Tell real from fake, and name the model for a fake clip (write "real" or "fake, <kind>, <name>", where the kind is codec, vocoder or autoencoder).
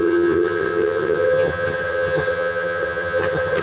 fake, vocoder, HiFi-GAN